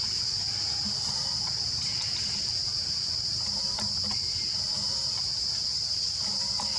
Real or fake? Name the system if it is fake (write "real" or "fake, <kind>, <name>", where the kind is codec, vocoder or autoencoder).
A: real